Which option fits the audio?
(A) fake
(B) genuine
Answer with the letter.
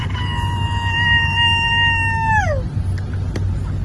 B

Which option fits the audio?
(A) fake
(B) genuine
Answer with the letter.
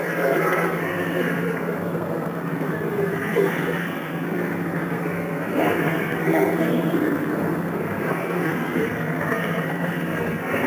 A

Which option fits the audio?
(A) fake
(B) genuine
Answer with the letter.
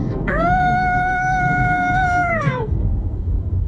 A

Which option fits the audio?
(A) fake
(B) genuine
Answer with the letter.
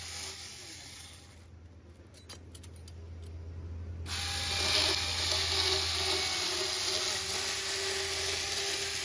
B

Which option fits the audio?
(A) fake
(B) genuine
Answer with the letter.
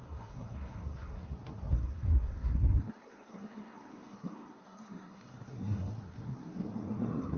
A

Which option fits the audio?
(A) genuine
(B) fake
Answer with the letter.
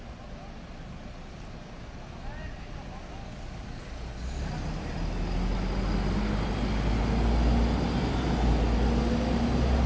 A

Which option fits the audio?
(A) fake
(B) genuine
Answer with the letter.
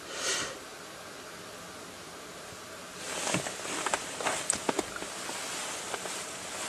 B